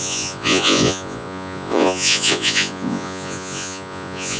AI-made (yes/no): yes